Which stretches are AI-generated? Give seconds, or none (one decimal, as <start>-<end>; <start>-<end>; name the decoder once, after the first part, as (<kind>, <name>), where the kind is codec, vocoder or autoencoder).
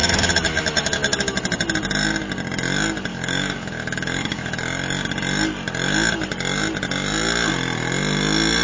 0.0-1.4 (autoencoder, DAC-VAE); 3.1-4.6